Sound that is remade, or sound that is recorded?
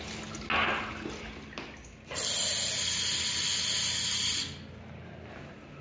recorded